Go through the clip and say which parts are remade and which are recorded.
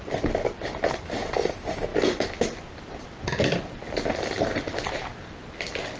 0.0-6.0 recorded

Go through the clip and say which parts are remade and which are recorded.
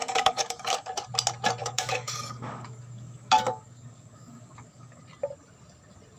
0.0-0.9 remade; 0.9-1.6 recorded; 1.6-5.0 remade; 5.0-6.2 recorded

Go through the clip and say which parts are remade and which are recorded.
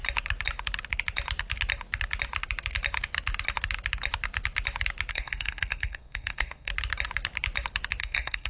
0.0-5.1 recorded; 5.1-6.7 remade; 6.7-8.0 recorded; 8.0-8.5 remade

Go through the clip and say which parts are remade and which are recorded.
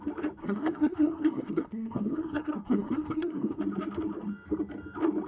0.0-0.4 recorded; 0.4-3.6 remade; 3.6-5.3 recorded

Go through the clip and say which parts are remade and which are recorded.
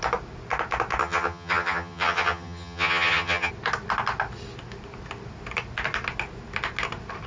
0.0-1.0 recorded; 1.0-3.5 remade; 3.5-7.3 recorded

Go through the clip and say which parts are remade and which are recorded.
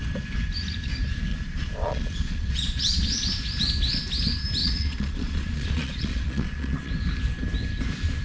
0.0-1.3 recorded; 1.3-3.1 remade; 3.1-4.6 recorded; 4.6-6.9 remade; 6.9-8.2 recorded